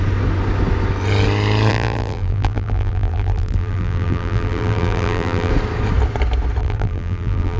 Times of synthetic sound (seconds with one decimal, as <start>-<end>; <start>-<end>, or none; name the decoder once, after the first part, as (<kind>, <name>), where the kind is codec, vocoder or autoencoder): 1.7-5.5 (vocoder, BigVGAN v2); 6.6-7.6